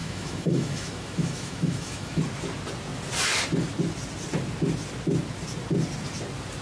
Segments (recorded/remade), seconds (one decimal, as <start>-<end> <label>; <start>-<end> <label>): 0.0-2.2 remade; 2.2-6.6 recorded